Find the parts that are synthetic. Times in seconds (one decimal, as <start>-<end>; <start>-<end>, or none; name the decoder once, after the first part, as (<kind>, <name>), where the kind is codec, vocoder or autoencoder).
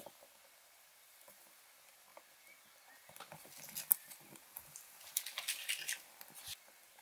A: none